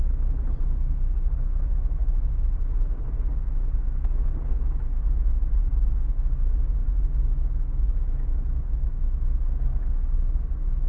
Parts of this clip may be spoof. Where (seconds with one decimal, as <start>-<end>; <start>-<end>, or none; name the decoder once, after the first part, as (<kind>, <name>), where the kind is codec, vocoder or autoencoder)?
2.0-3.0 (vocoder, BigVGAN v2); 5.3-5.9